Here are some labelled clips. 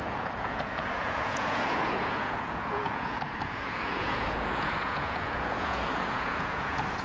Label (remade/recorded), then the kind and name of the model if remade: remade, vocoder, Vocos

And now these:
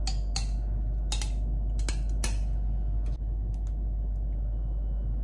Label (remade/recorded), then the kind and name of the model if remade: recorded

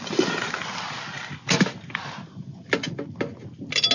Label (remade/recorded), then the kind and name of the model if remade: recorded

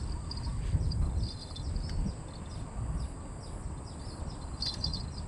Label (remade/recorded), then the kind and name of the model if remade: recorded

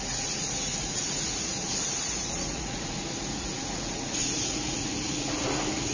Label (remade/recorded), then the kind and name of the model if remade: remade, vocoder, Vocos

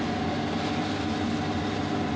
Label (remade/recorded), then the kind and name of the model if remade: recorded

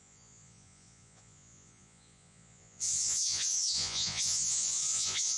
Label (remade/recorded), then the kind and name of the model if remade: remade, vocoder, Vocos